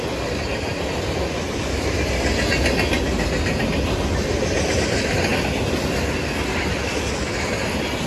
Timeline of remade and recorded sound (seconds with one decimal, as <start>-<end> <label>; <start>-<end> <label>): 0.0-8.1 recorded